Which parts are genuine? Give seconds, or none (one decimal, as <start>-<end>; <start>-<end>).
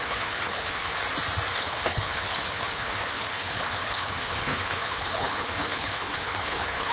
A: 0.9-1.5